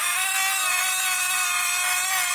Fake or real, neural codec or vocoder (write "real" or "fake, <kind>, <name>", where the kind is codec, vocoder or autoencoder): real